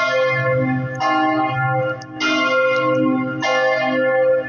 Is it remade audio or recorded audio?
recorded